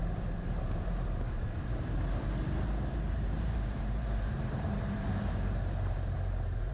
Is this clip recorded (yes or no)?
no